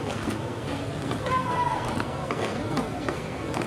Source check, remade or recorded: remade